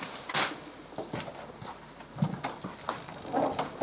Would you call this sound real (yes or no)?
yes